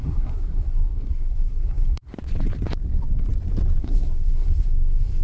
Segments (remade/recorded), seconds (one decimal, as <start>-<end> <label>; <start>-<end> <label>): 0.0-2.1 remade; 2.1-3.8 recorded; 3.8-5.2 remade